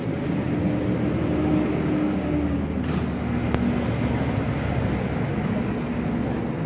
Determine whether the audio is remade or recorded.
recorded